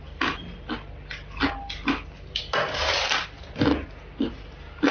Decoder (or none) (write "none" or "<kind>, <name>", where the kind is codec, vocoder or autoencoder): none